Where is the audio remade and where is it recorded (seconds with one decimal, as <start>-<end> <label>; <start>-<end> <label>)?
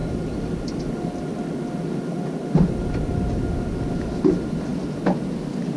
0.0-5.8 recorded